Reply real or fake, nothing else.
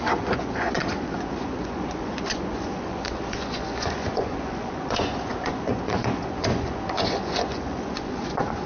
fake